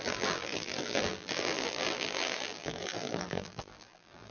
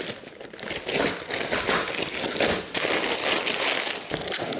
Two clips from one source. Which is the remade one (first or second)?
first